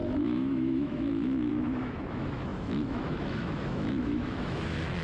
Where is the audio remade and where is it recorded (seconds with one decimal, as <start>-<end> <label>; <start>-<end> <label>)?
0.0-5.0 remade